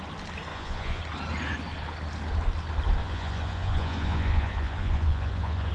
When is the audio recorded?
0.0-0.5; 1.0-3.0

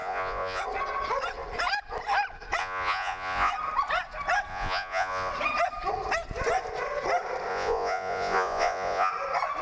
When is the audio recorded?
0.6-2.6; 3.5-4.5; 5.3-7.5; 9.1-9.6

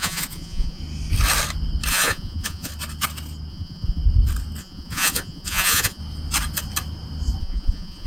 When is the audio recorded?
0.8-1.9; 2.7-3.5; 4.0-4.6; 6.0-7.4

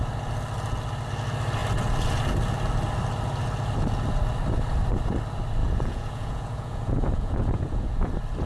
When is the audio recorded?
0.0-5.6; 8.1-8.5

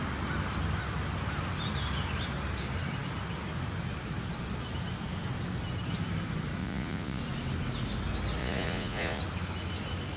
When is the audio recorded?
0.0-6.6; 7.2-8.4; 9.2-10.2